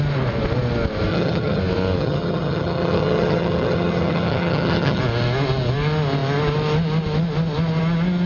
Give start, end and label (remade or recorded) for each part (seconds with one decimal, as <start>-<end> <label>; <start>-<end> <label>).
0.0-1.1 recorded; 1.1-1.6 remade; 1.6-2.0 recorded; 2.0-5.0 remade; 5.0-8.3 recorded